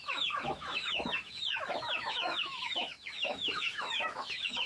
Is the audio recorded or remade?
remade